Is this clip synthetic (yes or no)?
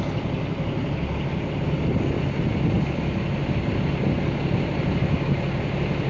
no